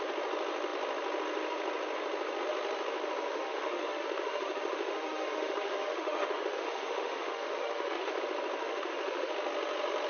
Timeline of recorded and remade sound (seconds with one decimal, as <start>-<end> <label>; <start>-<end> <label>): 0.0-3.3 recorded; 3.3-8.2 remade; 8.2-8.6 recorded; 8.6-9.3 remade; 9.3-10.1 recorded